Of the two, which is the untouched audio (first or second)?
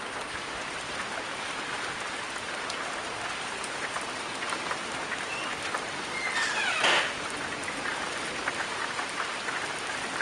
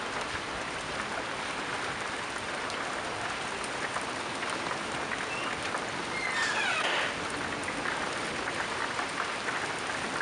second